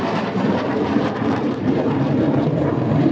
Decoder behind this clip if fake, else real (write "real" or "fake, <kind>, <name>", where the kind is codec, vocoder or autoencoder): fake, vocoder, BigVGAN v2